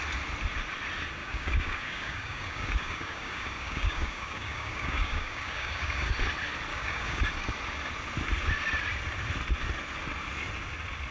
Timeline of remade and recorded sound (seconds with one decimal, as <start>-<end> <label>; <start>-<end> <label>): 0.0-1.2 recorded; 1.2-6.1 remade; 6.1-6.7 recorded; 6.7-7.2 remade; 7.2-11.1 recorded